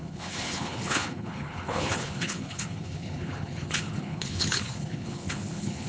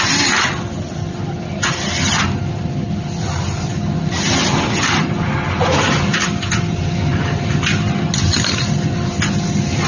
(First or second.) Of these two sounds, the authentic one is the second